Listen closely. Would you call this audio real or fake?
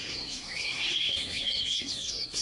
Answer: fake